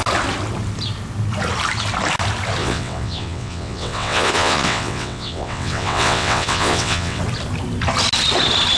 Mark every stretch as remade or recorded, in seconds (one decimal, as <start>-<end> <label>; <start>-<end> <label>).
0.0-2.6 recorded; 2.6-7.2 remade; 7.2-8.8 recorded